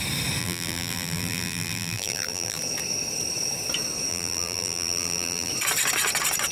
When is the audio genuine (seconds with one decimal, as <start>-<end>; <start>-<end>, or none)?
0.0-0.4; 2.6-4.1; 5.5-6.5